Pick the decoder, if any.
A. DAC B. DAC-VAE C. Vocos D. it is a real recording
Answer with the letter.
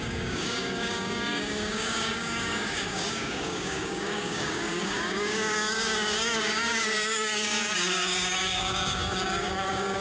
A